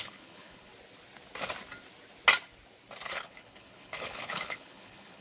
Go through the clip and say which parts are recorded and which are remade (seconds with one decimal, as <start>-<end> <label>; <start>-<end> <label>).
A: 0.0-0.7 remade; 0.7-3.1 recorded; 3.1-5.2 remade

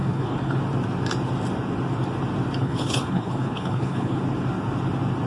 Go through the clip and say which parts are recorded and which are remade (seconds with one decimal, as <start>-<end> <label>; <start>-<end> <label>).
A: 0.0-0.6 remade; 0.6-2.6 recorded; 2.6-4.2 remade; 4.2-5.3 recorded

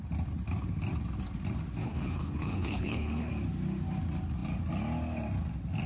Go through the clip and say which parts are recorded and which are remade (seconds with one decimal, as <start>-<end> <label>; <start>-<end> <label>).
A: 0.0-1.8 recorded; 1.8-3.3 remade; 3.3-5.9 recorded

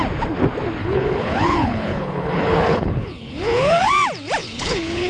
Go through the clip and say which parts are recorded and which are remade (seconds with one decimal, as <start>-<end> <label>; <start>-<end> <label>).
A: 0.0-0.8 recorded; 0.8-3.9 remade; 3.9-4.4 recorded; 4.4-5.1 remade

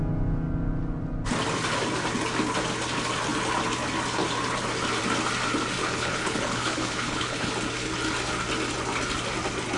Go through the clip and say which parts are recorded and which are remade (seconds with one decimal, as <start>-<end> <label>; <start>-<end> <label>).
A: 0.0-5.8 recorded; 5.8-7.5 remade; 7.5-9.8 recorded